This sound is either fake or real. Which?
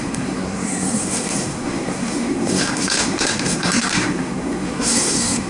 fake